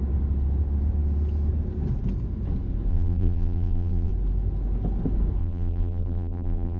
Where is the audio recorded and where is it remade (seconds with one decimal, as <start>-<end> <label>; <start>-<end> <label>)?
0.0-2.9 recorded; 2.9-4.1 remade; 4.1-5.4 recorded; 5.4-6.8 remade